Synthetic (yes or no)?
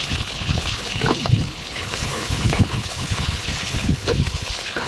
yes